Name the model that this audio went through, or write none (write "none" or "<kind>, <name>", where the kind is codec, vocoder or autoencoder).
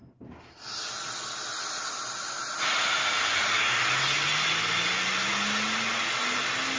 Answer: none